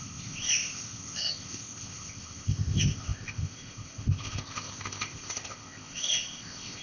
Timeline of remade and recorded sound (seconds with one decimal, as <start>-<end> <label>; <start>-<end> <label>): 0.0-6.8 remade